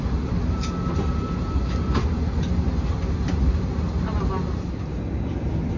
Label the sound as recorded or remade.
recorded